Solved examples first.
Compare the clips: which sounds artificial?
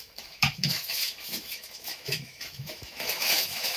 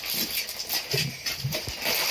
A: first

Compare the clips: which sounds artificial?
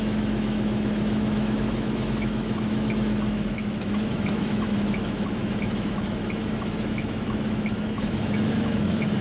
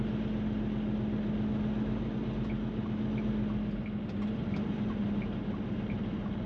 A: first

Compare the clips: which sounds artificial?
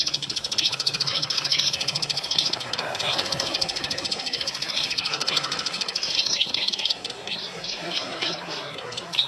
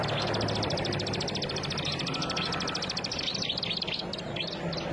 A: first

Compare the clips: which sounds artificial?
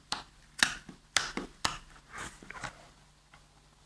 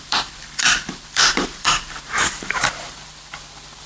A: second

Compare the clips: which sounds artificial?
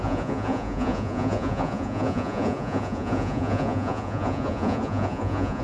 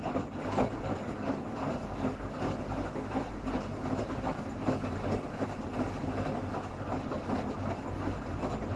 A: first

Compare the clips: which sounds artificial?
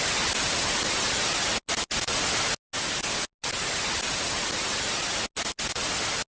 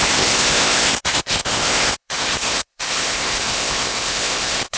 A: second